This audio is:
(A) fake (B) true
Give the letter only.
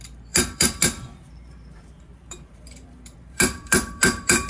A